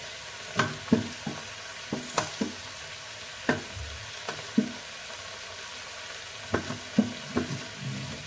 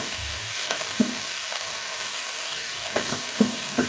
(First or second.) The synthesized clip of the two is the second